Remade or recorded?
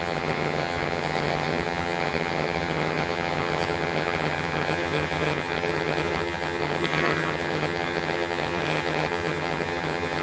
remade